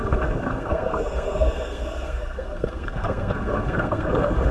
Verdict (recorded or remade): remade